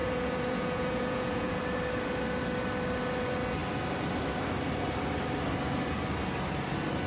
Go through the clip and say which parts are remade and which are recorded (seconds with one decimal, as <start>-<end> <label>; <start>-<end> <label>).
0.0-1.6 remade; 1.6-7.1 recorded